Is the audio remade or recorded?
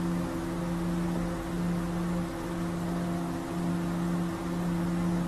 recorded